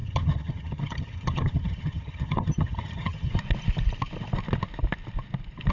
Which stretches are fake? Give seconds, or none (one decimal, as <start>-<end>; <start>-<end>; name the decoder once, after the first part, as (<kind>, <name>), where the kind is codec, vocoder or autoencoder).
0.0-3.4 (vocoder, HiFi-GAN)